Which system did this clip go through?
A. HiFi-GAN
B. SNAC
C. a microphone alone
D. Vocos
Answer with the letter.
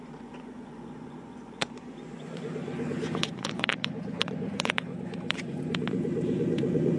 D